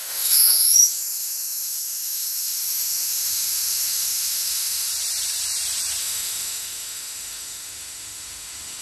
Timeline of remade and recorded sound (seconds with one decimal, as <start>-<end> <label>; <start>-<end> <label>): 0.0-4.9 remade; 4.9-6.0 recorded; 6.0-8.8 remade